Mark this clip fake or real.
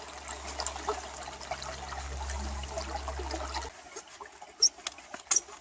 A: real